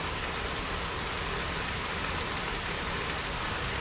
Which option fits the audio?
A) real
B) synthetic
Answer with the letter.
A